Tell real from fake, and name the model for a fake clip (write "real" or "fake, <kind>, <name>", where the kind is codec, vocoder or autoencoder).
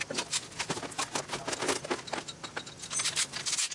real